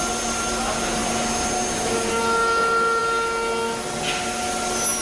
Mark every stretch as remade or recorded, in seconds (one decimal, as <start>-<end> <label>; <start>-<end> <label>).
0.0-5.0 recorded